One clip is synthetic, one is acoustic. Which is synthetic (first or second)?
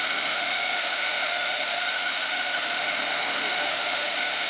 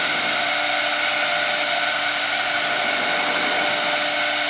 first